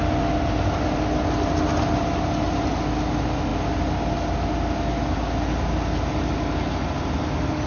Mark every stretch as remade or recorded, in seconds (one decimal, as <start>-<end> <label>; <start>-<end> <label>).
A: 0.0-7.7 recorded